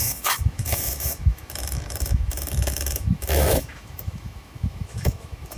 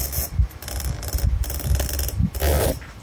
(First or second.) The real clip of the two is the second